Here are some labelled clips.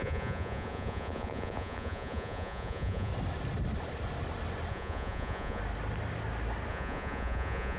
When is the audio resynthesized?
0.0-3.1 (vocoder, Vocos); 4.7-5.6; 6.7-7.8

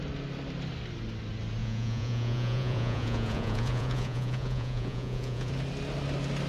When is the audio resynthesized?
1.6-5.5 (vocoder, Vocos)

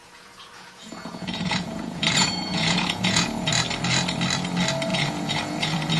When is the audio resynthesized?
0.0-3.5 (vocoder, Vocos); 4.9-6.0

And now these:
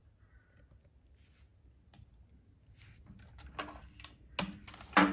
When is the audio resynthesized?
none

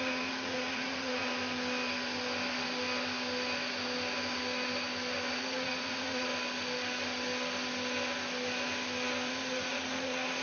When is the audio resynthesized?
0.0-1.3 (vocoder, Vocos); 5.4-6.3; 9.3-10.4

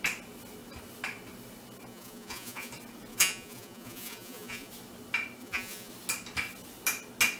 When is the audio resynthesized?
1.9-2.7 (vocoder, Vocos); 3.1-4.7; 5.4-5.9

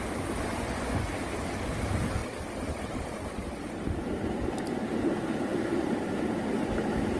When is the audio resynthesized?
0.5-1.1 (vocoder, Vocos)